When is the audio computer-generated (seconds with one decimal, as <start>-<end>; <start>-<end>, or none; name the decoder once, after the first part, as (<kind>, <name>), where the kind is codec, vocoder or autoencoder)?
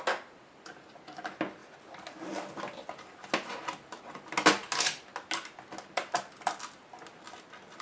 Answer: none